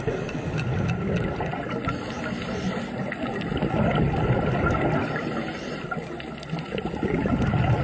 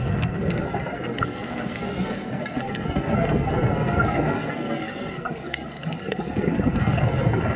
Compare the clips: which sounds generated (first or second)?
second